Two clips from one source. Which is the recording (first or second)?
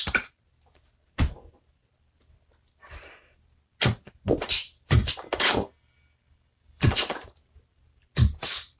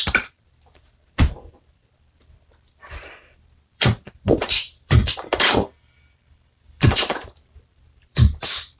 first